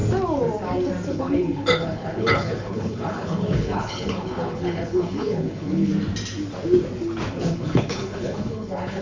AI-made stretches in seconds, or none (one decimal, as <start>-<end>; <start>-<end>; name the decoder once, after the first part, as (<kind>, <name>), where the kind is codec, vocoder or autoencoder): 1.1-5.9 (codec, HILCodec); 7.3-9.0